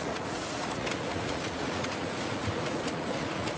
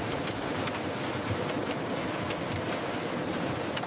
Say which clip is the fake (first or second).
first